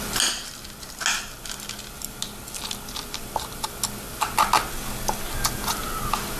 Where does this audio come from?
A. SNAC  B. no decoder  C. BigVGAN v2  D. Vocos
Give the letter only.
B